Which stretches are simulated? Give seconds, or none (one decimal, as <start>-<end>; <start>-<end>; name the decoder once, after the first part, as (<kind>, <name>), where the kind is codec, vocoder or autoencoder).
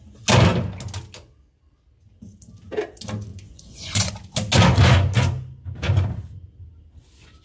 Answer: 3.3-4.1 (vocoder, Vocos)